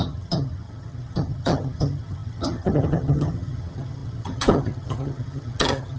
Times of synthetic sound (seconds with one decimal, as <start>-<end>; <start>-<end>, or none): 0.0-6.0

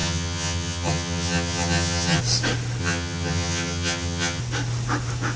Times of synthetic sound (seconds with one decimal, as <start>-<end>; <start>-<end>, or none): 0.0-2.2; 2.8-4.4

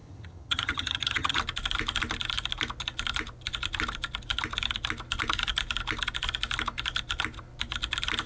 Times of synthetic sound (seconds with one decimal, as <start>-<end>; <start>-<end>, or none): 0.0-1.4

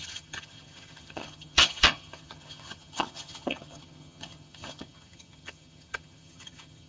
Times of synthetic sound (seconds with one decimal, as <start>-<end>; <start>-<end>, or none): 0.0-6.9

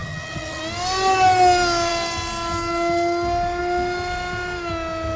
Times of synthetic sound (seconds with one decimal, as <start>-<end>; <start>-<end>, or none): 0.0-0.6

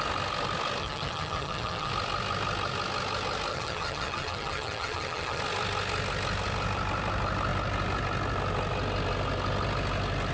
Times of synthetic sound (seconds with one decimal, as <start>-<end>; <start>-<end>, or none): 0.8-1.9; 3.5-5.4